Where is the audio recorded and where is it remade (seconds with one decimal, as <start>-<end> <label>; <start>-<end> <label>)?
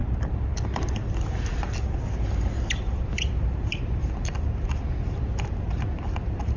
0.0-6.6 recorded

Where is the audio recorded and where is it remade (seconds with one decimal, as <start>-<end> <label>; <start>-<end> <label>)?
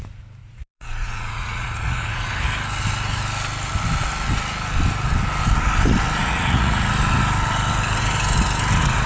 0.0-0.4 recorded; 0.4-2.3 remade; 2.3-6.2 recorded; 6.2-6.9 remade; 6.9-9.1 recorded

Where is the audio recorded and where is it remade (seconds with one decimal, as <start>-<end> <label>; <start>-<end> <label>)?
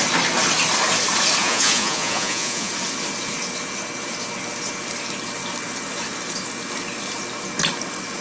0.0-1.4 recorded; 1.4-2.7 remade; 2.7-8.2 recorded